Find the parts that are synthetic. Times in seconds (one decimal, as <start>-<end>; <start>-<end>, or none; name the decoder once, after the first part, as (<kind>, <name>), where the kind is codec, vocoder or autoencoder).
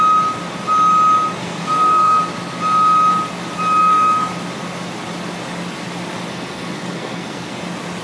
1.4-2.2 (codec, SNAC); 3.8-4.3; 6.3-7.6